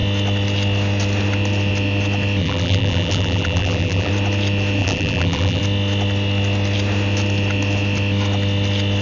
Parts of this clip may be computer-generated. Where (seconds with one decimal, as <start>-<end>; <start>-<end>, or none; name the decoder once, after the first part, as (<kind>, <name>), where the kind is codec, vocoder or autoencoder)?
2.4-4.1 (vocoder, BigVGAN v2); 4.8-5.6